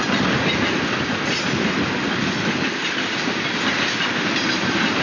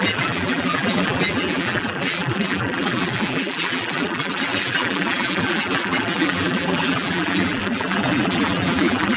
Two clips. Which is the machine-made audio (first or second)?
second